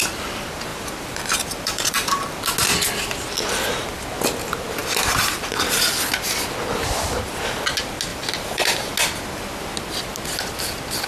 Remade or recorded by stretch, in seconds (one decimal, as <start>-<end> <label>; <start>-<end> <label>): 0.0-0.7 recorded; 0.7-2.4 remade; 2.4-4.8 recorded; 4.8-5.6 remade; 5.6-8.1 recorded; 8.1-8.8 remade; 8.8-11.1 recorded